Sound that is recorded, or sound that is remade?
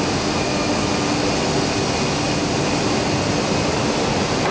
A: recorded